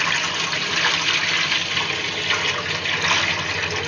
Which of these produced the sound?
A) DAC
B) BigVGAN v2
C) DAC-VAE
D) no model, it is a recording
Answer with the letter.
D